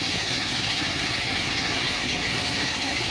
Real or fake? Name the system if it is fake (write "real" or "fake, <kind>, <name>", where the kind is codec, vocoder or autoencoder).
fake, codec, SNAC